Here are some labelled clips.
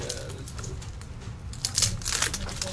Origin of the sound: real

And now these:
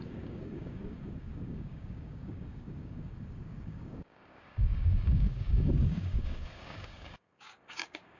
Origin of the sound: fake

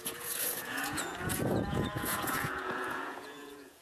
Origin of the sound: fake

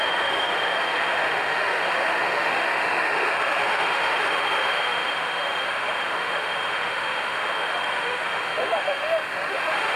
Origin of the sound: fake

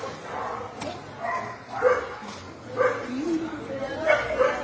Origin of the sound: real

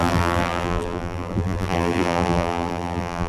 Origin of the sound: fake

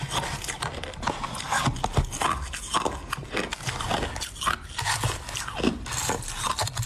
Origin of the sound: real